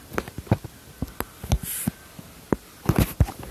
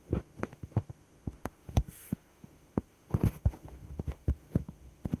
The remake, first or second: second